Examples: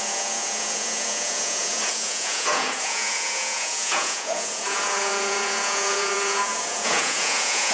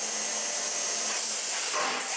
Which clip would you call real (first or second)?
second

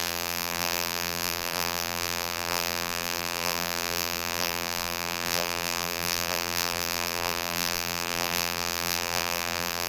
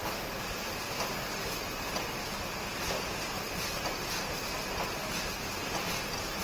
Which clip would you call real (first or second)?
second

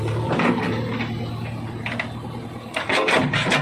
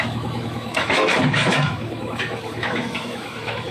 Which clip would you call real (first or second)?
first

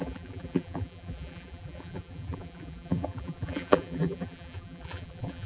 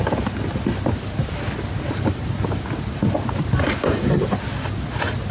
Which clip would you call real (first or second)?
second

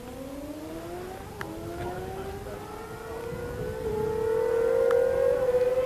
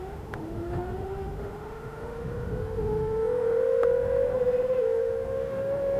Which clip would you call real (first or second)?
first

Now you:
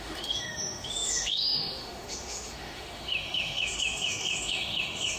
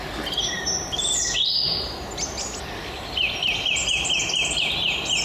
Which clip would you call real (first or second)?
second